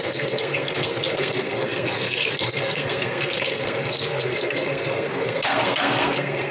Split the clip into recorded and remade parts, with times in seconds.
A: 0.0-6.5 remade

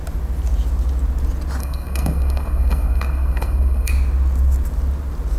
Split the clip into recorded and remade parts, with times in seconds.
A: 0.0-1.6 recorded; 1.6-3.9 remade; 3.9-5.4 recorded

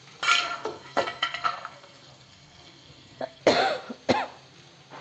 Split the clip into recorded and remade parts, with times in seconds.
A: 0.0-0.4 recorded; 0.4-3.4 remade; 3.4-5.0 recorded